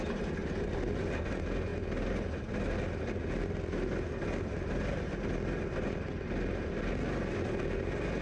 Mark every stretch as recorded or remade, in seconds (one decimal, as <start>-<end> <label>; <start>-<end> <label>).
0.0-8.2 recorded